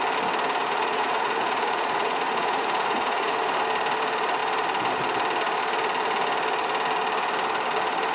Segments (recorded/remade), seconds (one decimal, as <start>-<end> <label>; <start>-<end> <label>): 0.0-0.6 recorded; 0.6-3.4 remade; 3.4-8.1 recorded